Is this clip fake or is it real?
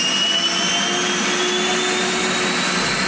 real